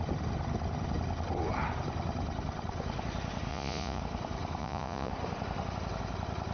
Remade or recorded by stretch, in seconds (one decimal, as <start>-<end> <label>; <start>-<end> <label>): 0.0-3.5 recorded; 3.5-4.0 remade; 4.0-4.6 recorded; 4.6-5.1 remade; 5.1-6.5 recorded